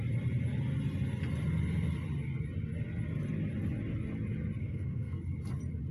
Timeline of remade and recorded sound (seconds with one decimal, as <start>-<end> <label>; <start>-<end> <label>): 0.0-4.6 recorded; 4.6-5.2 remade; 5.2-5.9 recorded